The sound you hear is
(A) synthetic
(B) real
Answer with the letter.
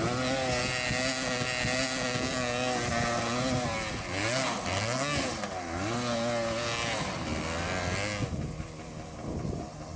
B